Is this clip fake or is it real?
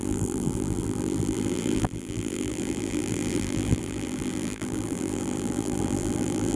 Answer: fake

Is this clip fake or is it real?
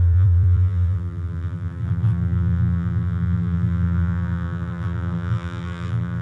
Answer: fake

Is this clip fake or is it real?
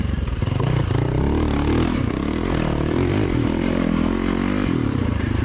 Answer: fake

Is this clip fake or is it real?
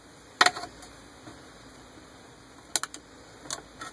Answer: real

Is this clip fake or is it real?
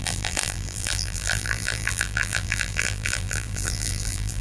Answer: fake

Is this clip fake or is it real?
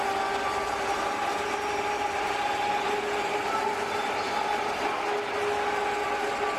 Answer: real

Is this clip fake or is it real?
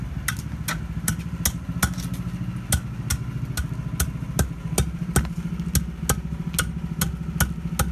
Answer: real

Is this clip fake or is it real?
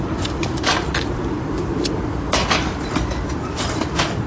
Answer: fake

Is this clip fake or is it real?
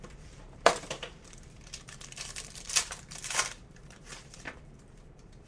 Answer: fake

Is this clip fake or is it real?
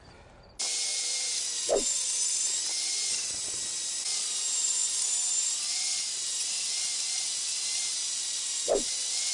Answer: real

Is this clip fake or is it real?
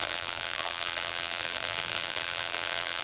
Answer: fake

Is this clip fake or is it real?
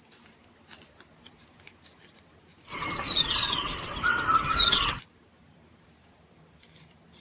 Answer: fake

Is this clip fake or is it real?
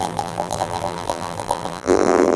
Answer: fake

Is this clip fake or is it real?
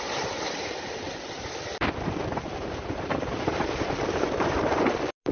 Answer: fake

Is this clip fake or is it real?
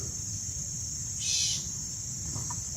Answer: fake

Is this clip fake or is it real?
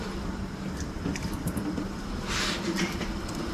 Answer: fake